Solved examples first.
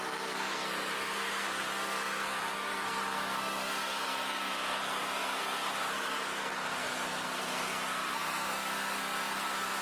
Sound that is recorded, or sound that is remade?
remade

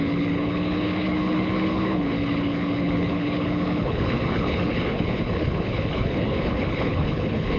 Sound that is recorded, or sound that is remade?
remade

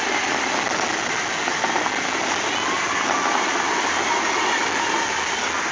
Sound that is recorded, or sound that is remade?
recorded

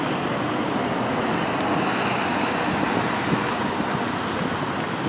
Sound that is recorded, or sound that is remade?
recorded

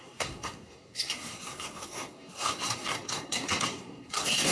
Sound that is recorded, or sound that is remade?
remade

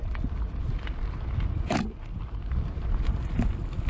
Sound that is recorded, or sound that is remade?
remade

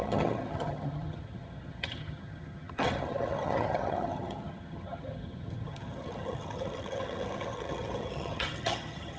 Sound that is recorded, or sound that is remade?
remade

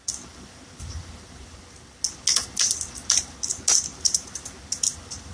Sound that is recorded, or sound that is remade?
recorded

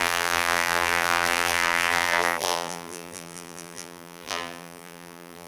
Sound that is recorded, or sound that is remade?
remade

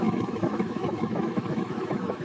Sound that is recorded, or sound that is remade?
remade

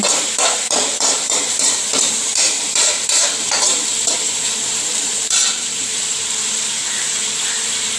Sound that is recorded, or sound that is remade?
remade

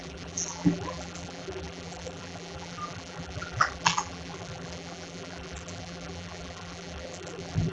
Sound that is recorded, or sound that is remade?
remade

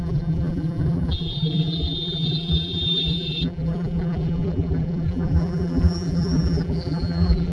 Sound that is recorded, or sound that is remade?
remade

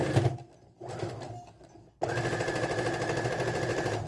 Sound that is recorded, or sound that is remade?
recorded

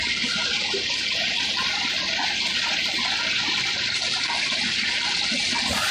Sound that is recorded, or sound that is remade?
remade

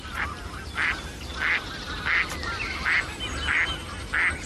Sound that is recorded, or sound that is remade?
recorded